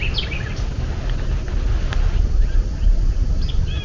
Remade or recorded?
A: recorded